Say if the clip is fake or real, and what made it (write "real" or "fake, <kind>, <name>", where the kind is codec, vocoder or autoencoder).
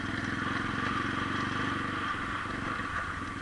real